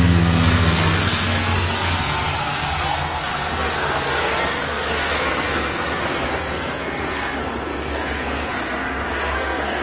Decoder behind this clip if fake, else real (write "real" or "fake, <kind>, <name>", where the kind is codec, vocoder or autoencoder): fake, codec, SNAC